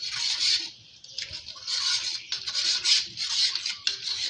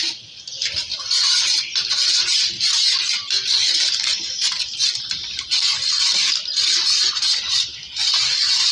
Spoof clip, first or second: first